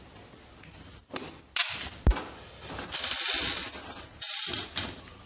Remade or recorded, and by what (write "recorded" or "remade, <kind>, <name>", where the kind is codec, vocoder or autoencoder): recorded